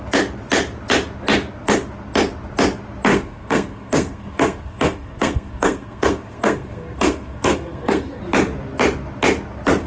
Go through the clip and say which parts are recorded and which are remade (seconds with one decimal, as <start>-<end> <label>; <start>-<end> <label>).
0.0-3.1 recorded; 3.1-8.2 remade; 8.2-9.9 recorded